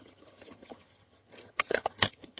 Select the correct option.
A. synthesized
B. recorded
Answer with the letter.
A